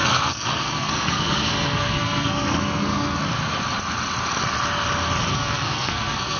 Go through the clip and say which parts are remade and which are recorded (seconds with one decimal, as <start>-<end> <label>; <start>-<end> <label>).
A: 0.0-3.2 remade; 3.2-5.3 recorded; 5.3-6.4 remade